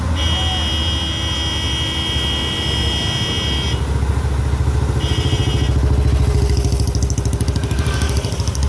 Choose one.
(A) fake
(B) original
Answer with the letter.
B